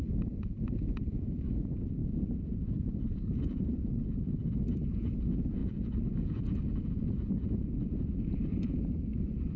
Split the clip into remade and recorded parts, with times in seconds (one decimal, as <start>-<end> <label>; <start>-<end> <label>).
0.0-9.6 remade